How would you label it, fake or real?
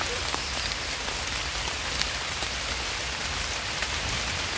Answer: real